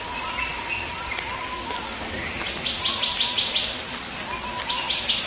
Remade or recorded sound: recorded